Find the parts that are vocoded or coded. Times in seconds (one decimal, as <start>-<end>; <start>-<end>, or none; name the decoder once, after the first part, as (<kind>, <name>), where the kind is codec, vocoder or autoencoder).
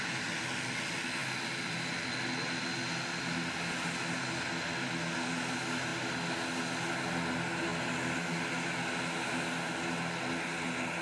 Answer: 5.9-6.7 (vocoder, BigVGAN v2); 7.7-8.5